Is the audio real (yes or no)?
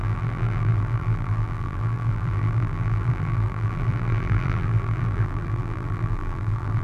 no